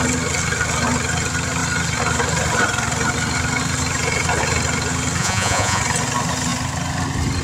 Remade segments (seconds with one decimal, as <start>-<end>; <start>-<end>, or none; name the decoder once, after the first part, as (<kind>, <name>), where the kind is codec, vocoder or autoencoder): 5.2-5.8 (vocoder, Vocos)